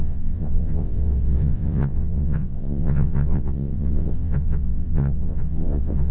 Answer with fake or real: fake